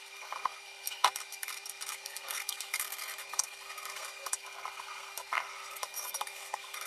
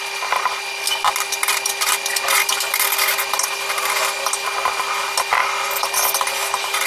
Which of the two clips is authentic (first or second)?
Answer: second